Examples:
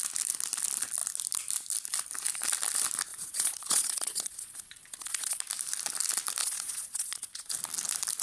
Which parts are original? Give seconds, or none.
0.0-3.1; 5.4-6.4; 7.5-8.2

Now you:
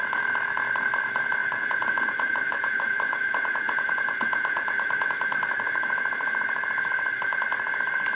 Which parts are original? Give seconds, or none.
0.0-1.4; 5.1-8.1

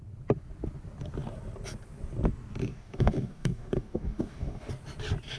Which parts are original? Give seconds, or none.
0.0-2.6; 4.7-5.4

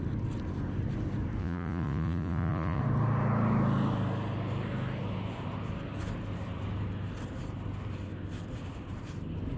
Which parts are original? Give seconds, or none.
0.0-1.4; 2.8-9.6